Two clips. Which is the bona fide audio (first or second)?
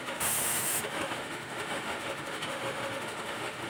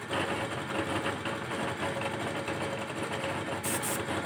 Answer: second